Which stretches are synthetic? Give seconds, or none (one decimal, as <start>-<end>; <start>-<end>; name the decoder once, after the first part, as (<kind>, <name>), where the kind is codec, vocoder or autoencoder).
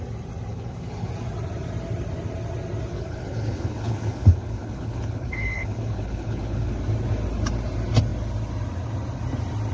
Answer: 0.5-1.1 (codec, HILCodec); 2.9-6.7